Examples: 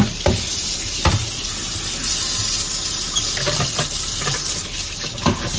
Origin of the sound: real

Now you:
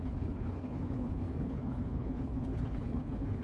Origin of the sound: fake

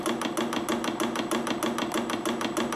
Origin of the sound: real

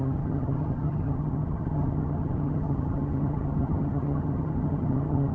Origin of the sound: fake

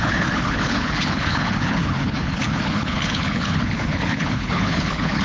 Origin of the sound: fake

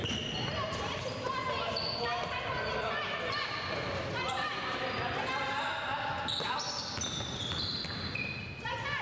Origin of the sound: real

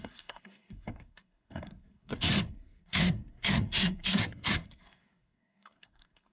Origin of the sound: fake